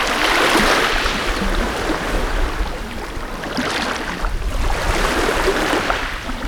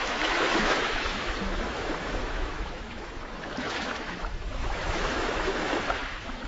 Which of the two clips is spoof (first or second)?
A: second